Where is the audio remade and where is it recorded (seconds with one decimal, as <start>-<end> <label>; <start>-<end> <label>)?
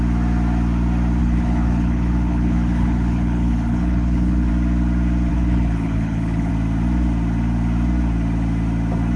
0.0-1.2 recorded; 1.2-4.5 remade; 4.5-5.3 recorded; 5.3-6.5 remade; 6.5-9.2 recorded